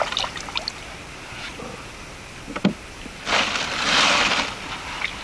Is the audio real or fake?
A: real